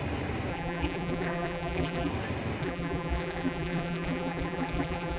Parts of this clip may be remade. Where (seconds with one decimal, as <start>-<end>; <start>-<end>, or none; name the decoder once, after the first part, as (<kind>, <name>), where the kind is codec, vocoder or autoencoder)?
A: 0.5-2.1 (vocoder, BigVGAN v2); 2.6-5.2